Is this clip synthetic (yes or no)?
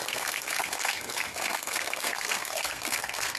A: yes